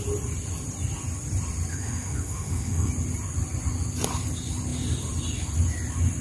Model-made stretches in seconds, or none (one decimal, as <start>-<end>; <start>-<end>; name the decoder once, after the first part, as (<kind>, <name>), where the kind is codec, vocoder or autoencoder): 1.7-2.9 (autoencoder, DAC-VAE)